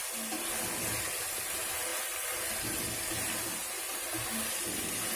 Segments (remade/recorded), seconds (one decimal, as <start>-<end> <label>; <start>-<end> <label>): 0.0-5.2 recorded